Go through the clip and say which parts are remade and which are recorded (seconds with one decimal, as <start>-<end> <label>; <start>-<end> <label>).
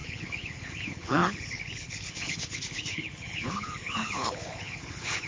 0.0-5.3 remade